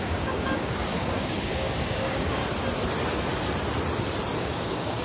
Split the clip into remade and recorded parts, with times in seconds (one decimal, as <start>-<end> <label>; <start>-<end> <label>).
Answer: 0.0-2.4 remade; 2.4-4.4 recorded; 4.4-5.0 remade